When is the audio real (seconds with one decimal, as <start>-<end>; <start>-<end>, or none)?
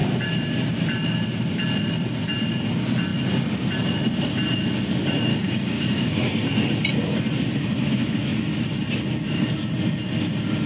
0.0-5.3; 6.3-10.7